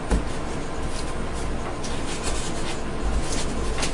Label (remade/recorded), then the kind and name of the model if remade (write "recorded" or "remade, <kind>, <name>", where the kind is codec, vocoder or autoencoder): recorded